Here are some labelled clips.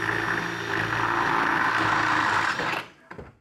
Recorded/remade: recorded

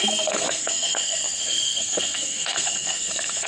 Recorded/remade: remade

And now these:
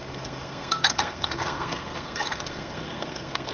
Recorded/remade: remade